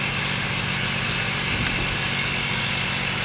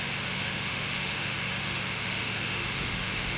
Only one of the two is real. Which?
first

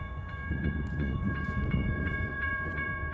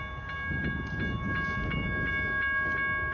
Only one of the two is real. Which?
second